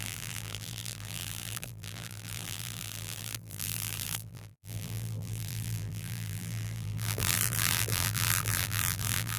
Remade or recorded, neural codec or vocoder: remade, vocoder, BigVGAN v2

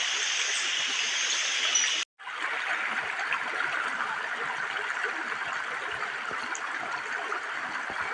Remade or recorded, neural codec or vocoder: recorded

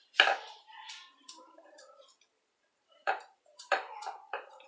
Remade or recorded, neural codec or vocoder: remade, vocoder, BigVGAN v2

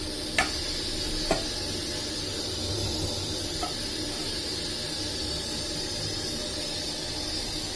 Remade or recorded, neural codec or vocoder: recorded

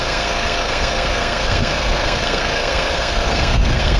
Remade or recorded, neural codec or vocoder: remade, codec, SNAC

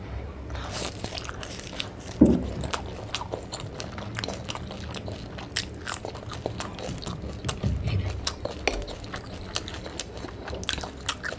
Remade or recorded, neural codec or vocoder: recorded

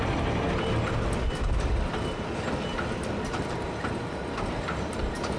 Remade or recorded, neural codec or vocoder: recorded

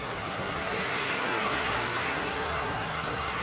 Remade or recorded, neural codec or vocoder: remade, codec, SNAC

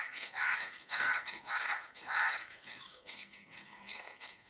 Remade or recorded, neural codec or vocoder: remade, codec, SNAC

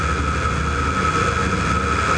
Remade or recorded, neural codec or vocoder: recorded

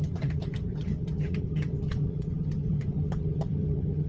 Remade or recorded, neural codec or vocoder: remade, vocoder, HiFi-GAN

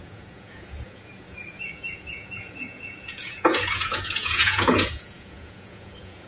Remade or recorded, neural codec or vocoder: remade, vocoder, Vocos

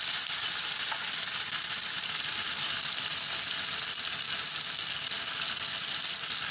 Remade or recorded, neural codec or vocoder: recorded